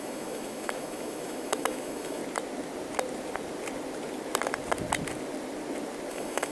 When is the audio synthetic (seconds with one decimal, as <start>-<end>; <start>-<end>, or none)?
0.0-2.2; 6.1-6.5